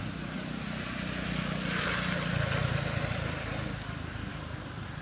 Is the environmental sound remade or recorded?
recorded